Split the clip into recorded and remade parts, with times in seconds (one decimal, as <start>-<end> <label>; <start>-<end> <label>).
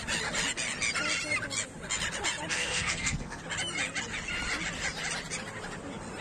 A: 0.0-2.5 recorded; 2.5-3.4 remade; 3.4-6.2 recorded